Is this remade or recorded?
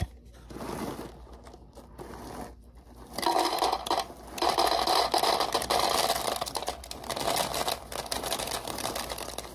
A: recorded